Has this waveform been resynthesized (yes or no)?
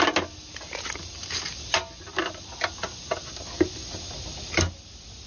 no